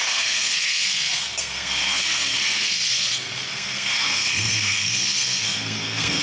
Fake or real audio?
fake